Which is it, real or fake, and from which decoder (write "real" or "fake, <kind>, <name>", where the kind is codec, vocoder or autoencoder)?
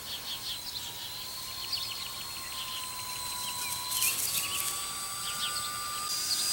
real